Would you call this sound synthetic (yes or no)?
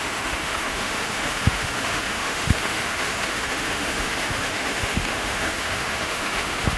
yes